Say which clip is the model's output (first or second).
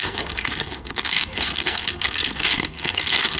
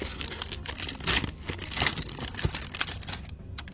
first